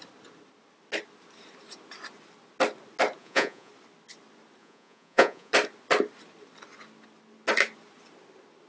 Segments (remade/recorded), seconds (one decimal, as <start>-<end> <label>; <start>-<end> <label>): 0.0-3.2 recorded; 3.2-3.7 remade; 3.7-4.6 recorded; 4.6-5.5 remade; 5.5-8.7 recorded